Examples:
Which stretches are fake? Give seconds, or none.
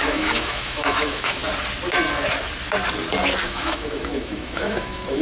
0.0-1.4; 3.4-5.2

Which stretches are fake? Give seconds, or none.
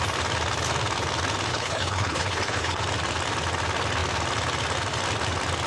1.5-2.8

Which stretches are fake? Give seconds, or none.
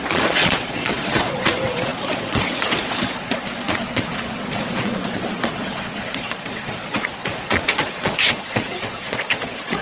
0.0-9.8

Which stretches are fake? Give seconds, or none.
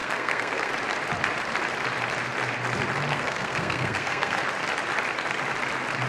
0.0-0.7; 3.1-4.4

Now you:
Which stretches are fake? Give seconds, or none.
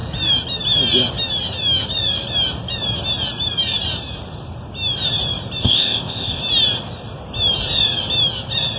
5.6-6.4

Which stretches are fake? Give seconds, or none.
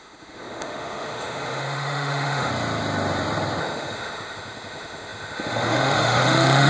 0.0-2.5; 3.6-6.7